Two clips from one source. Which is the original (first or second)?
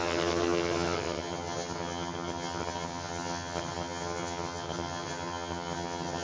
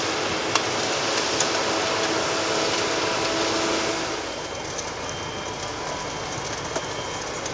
second